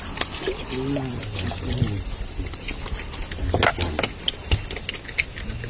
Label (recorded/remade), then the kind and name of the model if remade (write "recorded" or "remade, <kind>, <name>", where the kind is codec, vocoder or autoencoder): recorded